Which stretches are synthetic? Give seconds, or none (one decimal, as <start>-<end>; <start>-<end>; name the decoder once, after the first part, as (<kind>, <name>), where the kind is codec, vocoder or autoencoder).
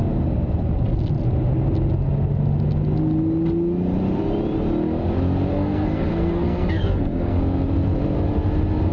5.5-7.4 (codec, SNAC)